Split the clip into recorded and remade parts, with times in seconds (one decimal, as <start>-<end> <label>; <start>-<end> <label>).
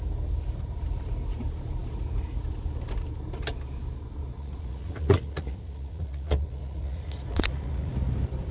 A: 0.0-4.3 recorded; 4.3-7.9 remade; 7.9-8.5 recorded